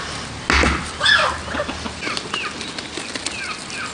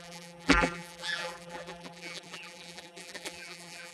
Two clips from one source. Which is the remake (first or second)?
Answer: second